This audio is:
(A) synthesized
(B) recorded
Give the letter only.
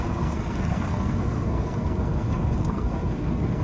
A